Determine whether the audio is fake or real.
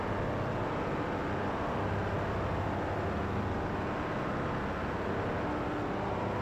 real